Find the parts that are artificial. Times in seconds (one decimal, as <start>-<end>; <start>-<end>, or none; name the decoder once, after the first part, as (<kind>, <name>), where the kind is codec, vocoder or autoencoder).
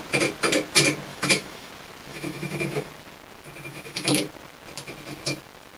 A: 1.1-1.7 (autoencoder, DAC-VAE); 2.1-2.9; 3.7-4.2